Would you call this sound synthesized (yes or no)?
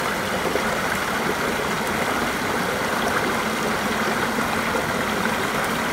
no